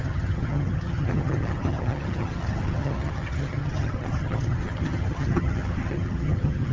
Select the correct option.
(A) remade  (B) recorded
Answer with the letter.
A